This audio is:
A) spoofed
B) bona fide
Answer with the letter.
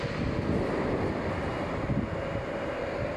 B